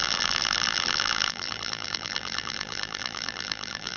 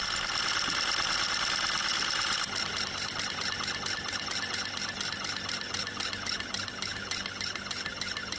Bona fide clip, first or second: second